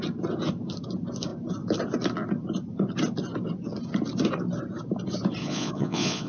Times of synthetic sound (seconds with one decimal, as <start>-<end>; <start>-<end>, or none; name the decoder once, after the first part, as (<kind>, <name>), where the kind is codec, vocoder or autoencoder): 5.4-6.3 (vocoder, Vocos)